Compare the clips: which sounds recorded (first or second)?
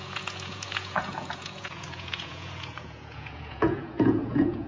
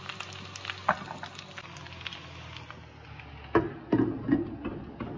second